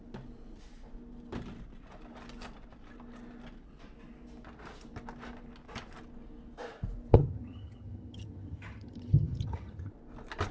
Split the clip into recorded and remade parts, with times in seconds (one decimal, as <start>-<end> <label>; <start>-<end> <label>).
0.0-7.1 recorded; 7.1-9.9 remade; 9.9-10.5 recorded